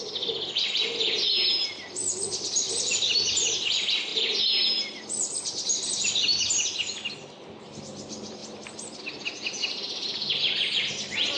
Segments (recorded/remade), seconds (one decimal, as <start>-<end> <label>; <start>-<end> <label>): 0.0-11.4 recorded